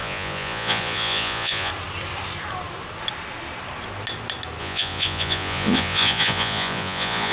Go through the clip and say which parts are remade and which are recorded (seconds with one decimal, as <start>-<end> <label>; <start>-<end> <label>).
0.0-1.7 remade; 1.7-4.6 recorded; 4.6-7.3 remade